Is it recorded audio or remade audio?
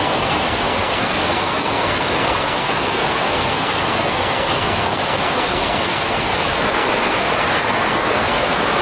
remade